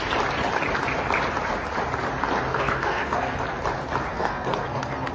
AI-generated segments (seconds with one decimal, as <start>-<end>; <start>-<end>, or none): 2.5-3.4; 4.1-5.1